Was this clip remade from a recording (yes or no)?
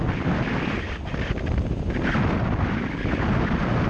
no